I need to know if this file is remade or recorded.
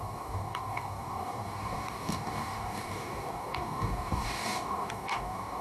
remade